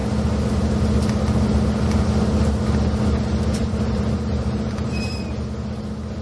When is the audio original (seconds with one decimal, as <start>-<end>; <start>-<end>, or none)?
0.0-3.6; 5.3-6.2